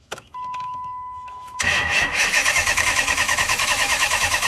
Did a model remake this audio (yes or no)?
yes